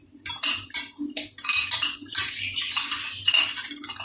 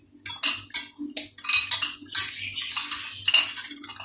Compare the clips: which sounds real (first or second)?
second